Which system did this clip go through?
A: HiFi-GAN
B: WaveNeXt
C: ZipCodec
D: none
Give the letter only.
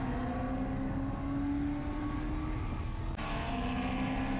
D